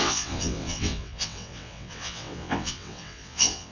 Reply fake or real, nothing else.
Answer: fake